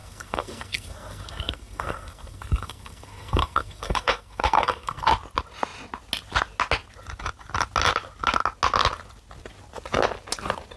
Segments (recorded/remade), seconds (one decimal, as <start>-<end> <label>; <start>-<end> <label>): 0.0-5.1 remade; 5.1-10.8 recorded